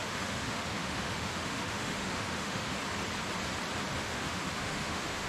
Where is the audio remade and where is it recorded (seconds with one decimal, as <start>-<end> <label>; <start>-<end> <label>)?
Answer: 0.0-2.8 remade; 2.8-4.0 recorded; 4.0-5.3 remade